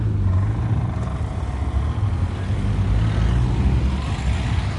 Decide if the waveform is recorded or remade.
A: recorded